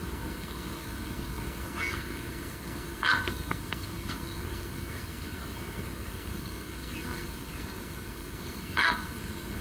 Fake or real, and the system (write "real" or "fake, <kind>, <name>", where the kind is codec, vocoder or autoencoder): fake, codec, SNAC